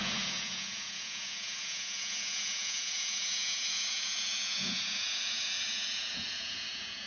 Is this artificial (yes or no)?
yes